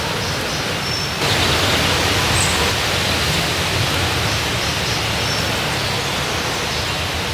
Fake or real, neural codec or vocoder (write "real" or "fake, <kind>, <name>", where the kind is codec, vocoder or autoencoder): real